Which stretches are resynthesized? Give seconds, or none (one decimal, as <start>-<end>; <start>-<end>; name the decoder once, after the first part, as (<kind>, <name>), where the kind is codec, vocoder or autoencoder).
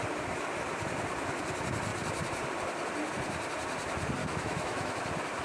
4.2-5.0 (autoencoder, DAC-VAE)